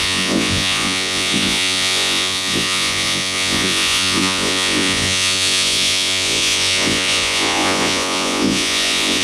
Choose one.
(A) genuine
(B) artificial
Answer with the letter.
B